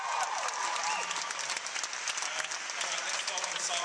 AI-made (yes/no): no